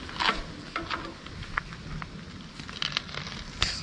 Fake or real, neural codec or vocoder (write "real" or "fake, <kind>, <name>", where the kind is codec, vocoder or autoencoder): real